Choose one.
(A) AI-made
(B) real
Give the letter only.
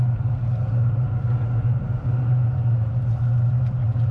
B